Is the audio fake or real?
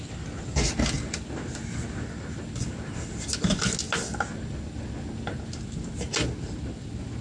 real